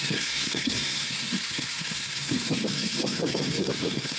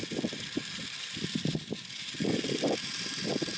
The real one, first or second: second